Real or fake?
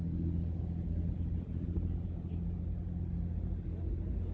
real